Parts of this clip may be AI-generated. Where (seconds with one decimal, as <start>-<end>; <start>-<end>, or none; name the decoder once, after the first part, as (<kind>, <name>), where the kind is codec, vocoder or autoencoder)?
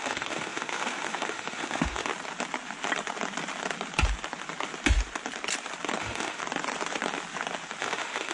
0.0-2.1 (autoencoder, DAC-VAE); 6.0-6.4; 7.8-8.3